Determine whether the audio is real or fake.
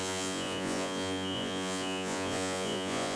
fake